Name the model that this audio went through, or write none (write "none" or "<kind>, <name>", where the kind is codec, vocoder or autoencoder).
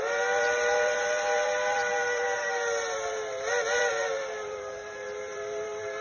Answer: vocoder, BigVGAN v2